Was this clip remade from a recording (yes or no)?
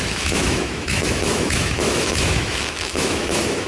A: yes